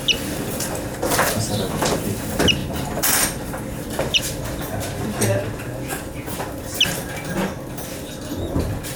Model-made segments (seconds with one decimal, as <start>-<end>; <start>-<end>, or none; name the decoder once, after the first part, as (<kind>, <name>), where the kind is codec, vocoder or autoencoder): 2.6-4.2 (vocoder, BigVGAN v2)